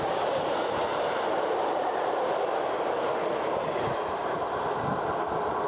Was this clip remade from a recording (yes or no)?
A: no